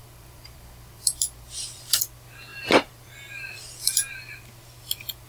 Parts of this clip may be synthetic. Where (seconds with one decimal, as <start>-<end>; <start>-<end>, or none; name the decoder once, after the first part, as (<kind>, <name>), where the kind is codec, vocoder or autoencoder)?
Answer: 0.0-2.0 (vocoder, BigVGAN v2); 2.5-4.1